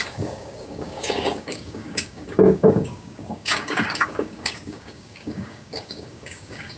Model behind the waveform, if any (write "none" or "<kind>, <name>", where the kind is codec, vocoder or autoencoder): codec, DAC